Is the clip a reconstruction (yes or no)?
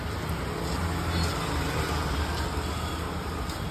no